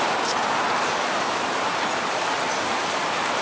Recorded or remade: recorded